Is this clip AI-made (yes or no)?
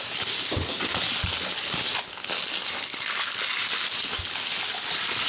no